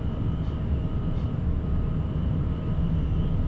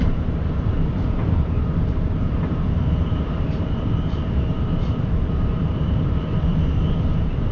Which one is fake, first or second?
second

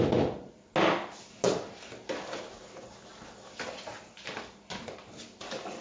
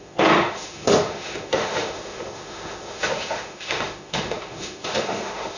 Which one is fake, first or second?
second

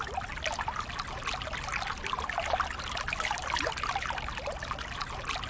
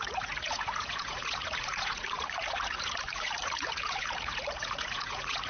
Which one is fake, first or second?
second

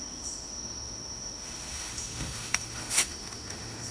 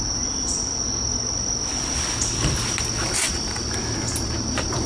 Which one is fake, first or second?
first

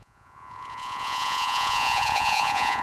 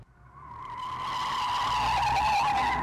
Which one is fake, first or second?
first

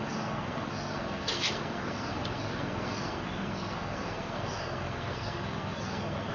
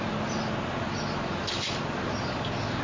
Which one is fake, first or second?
first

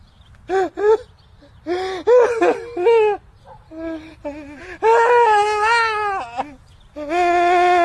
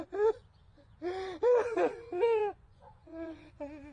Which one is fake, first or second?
second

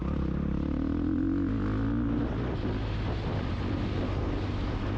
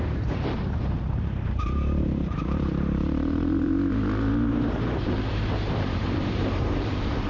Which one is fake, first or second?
second